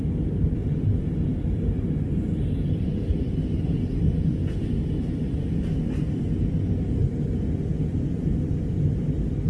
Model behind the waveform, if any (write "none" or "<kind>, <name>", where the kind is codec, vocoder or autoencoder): none